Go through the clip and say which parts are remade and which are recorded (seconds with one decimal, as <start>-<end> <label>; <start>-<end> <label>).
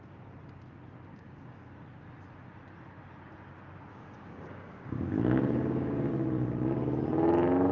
0.0-1.1 recorded; 1.1-1.7 remade; 1.7-3.9 recorded; 3.9-6.1 remade; 6.1-7.7 recorded